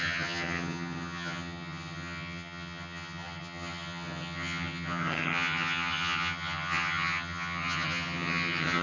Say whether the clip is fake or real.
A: fake